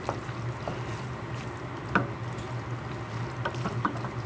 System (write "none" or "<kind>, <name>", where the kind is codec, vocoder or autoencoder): none